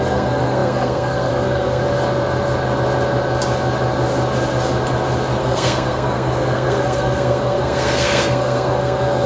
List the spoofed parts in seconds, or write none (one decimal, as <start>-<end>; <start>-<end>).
0.0-1.8; 5.4-9.3